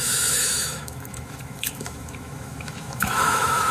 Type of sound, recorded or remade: remade